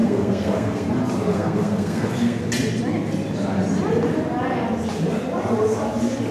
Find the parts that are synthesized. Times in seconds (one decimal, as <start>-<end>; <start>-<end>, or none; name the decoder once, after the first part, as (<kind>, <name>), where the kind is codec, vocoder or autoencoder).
0.0-0.9 (codec, SNAC); 1.3-2.4